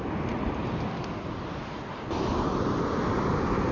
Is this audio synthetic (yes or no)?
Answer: no